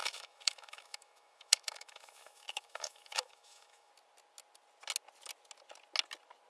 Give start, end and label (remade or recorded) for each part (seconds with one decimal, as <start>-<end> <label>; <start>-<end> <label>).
0.0-3.9 remade; 3.9-6.5 recorded